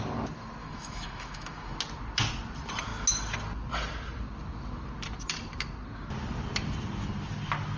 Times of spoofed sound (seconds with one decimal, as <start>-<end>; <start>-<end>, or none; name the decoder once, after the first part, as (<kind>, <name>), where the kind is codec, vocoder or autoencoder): 0.6-1.8 (autoencoder, DAC-VAE)